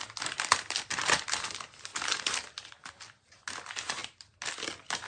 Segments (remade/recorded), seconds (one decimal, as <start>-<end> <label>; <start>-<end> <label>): 0.0-5.1 recorded